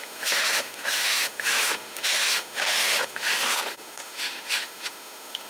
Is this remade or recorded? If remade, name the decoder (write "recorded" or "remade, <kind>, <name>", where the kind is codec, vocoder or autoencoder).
remade, autoencoder, DAC-VAE